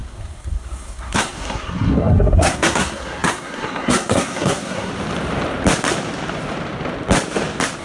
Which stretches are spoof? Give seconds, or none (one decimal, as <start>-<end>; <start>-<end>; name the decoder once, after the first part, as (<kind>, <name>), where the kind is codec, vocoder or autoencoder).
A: 0.0-4.9 (codec, SNAC)